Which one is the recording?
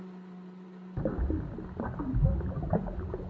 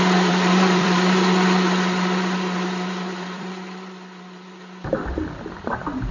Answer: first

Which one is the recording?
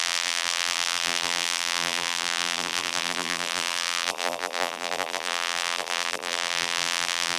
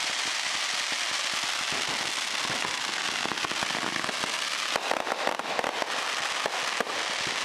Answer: second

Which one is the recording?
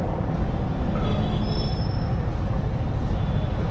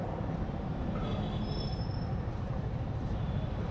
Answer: first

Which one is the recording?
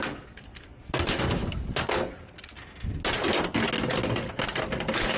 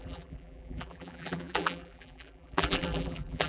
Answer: first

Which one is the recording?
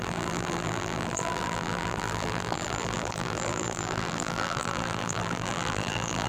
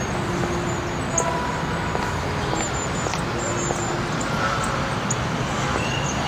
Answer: second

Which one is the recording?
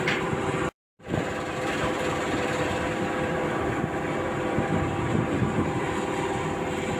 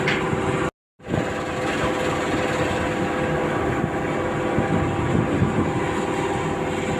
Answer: second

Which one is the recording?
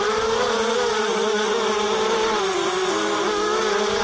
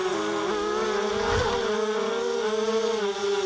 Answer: second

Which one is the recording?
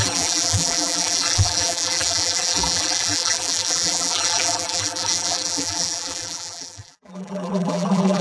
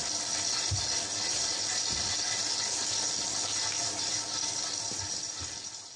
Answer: second